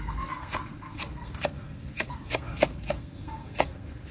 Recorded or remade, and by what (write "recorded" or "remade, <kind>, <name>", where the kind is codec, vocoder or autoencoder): remade, codec, SNAC